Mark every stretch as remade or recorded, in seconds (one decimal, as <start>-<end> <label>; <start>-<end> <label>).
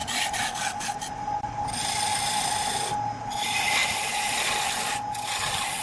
0.0-5.8 recorded